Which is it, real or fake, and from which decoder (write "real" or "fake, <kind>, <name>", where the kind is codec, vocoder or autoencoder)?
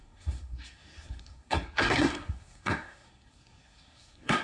fake, codec, SNAC